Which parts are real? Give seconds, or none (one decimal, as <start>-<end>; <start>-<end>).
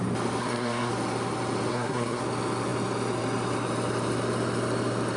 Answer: 0.0-0.4; 0.9-1.7; 2.2-5.2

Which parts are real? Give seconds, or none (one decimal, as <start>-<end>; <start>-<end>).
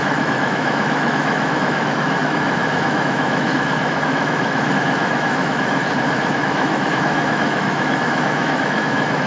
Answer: 5.8-6.4